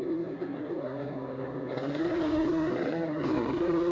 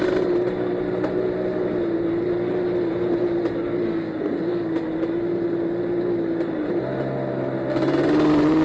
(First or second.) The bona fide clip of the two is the second